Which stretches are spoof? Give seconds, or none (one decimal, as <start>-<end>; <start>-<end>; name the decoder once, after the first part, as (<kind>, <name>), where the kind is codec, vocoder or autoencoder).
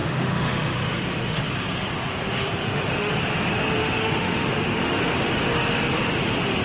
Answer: 0.0-1.4 (autoencoder, DAC-VAE); 2.6-3.1; 3.8-5.0